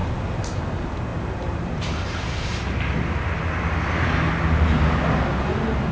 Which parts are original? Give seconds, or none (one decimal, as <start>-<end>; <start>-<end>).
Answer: 0.0-1.1; 2.2-5.9